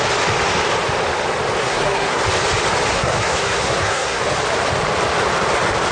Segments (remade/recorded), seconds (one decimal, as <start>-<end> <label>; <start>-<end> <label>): 0.0-1.6 recorded; 1.6-2.2 remade; 2.2-2.9 recorded; 2.9-4.2 remade; 4.2-5.9 recorded